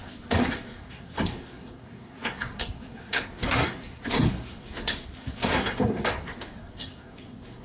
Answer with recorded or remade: remade